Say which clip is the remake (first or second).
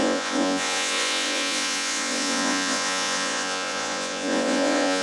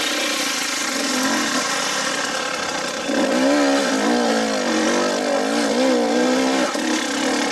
first